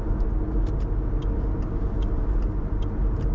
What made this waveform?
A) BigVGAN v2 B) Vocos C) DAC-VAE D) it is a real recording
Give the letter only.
D